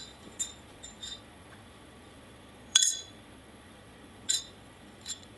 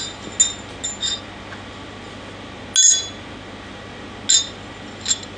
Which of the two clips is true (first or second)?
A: second